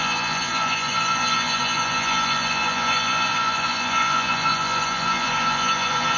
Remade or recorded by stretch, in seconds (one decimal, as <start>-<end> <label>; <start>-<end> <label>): 0.0-6.2 remade